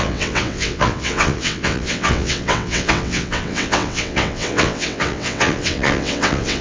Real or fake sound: fake